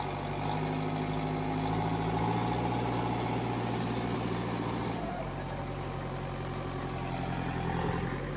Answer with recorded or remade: recorded